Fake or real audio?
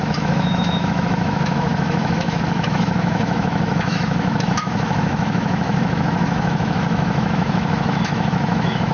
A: fake